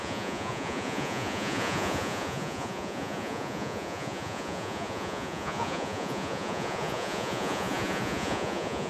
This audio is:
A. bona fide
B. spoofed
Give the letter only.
B